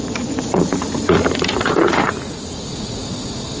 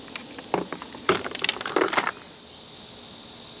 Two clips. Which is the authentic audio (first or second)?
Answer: second